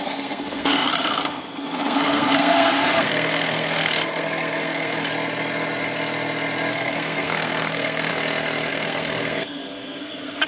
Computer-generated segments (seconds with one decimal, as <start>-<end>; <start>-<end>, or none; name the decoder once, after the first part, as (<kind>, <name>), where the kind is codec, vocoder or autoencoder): 0.0-5.1 (codec, SNAC); 6.7-8.1; 8.7-10.5